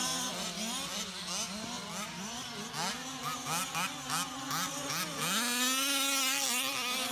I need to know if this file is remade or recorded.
recorded